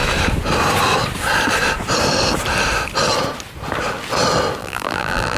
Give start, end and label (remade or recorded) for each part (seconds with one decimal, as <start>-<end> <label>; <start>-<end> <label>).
0.0-4.6 recorded; 4.6-5.4 remade